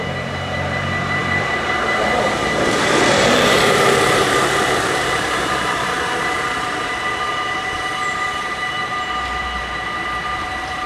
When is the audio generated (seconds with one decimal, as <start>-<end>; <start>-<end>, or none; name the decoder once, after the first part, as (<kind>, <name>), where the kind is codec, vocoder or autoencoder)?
0.0-10.9 (vocoder, BigVGAN v2)